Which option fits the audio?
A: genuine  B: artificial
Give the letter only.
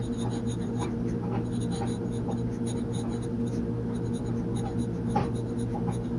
A